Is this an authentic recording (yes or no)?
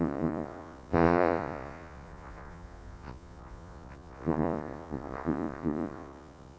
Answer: no